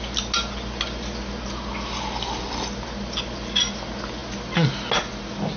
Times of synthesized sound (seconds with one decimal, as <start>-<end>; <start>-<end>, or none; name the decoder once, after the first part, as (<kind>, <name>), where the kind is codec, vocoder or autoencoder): none